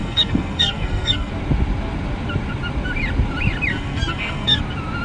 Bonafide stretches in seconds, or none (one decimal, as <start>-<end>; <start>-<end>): 1.3-3.7; 4.6-5.0